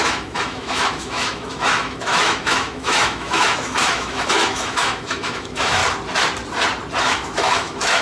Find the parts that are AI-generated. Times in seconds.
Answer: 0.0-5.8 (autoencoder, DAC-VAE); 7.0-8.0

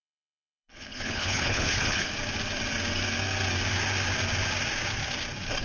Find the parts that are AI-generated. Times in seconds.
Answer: 0.0-2.1 (codec, HILCodec)

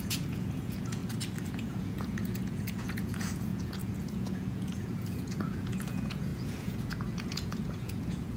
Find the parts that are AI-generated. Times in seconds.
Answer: 0.0-1.0 (vocoder, Vocos); 1.5-8.4

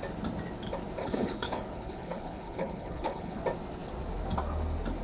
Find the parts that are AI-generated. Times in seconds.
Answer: 1.0-3.4 (codec, HILCodec)

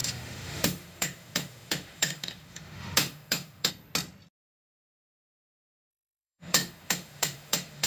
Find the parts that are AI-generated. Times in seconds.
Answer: 0.0-3.7 (autoencoder, DAC-VAE); 5.9-7.9